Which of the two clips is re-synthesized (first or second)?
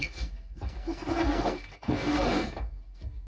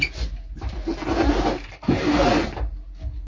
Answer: first